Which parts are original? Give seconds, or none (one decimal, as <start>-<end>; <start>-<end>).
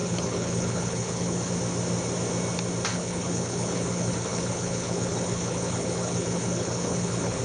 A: 1.5-2.9